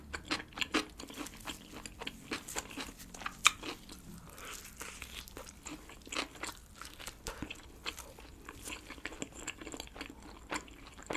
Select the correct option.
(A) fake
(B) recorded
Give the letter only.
B